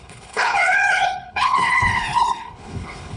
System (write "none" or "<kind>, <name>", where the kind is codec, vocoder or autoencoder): codec, HILCodec